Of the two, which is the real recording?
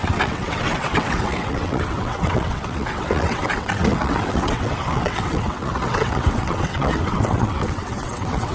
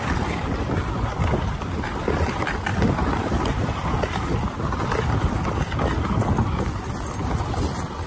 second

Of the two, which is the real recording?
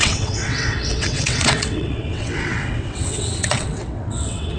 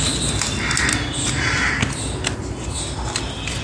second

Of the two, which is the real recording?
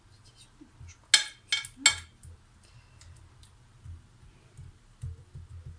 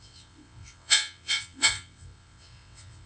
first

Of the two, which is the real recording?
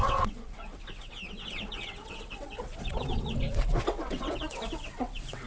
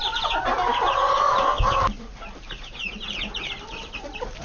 second